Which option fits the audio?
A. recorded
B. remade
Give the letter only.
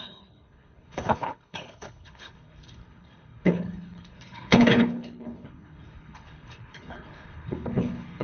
B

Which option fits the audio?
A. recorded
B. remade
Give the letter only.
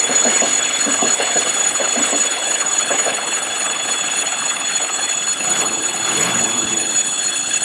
B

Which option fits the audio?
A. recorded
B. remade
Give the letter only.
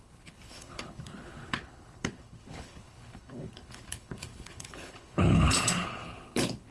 B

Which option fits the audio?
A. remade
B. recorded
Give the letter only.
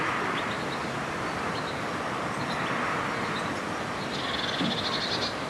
B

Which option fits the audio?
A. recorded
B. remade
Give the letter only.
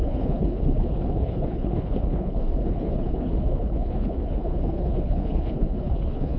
B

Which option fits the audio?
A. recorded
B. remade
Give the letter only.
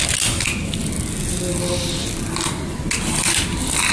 A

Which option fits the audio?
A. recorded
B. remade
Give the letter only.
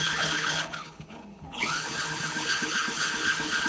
B